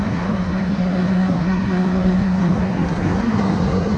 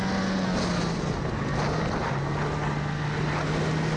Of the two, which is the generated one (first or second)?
first